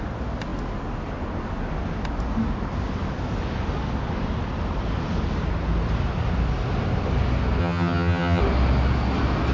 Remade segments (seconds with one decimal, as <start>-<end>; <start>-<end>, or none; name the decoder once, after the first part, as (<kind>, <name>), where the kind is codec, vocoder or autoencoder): 7.6-8.4 (vocoder, HiFi-GAN)